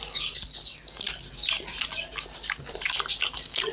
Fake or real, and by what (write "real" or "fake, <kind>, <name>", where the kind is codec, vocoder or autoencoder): real